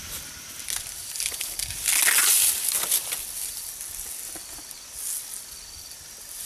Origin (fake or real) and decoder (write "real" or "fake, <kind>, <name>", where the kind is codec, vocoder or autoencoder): real